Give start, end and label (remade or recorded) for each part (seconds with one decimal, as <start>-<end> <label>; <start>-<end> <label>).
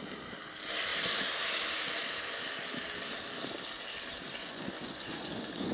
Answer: 0.0-4.3 recorded; 4.3-5.7 remade